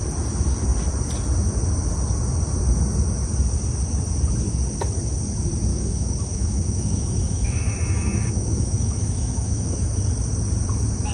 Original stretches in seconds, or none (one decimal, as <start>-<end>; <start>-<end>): 0.0-5.7; 10.0-11.1